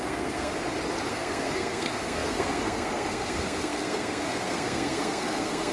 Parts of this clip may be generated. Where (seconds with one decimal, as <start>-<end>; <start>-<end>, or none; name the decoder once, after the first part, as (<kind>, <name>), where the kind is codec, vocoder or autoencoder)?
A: 0.0-0.5 (codec, SNAC); 1.1-5.7